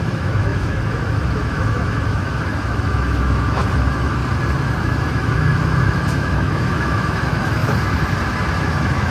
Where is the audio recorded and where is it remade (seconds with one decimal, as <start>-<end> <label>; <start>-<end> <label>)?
0.0-4.2 remade; 4.2-4.8 recorded; 4.8-7.6 remade; 7.6-8.6 recorded; 8.6-9.1 remade